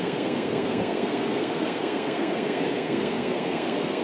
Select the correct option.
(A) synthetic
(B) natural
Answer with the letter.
A